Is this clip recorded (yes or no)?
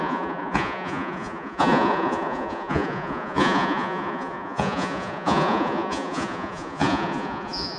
no